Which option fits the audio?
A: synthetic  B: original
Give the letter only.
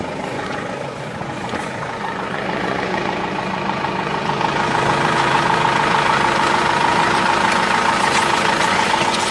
A